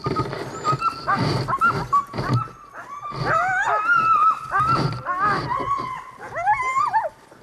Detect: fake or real real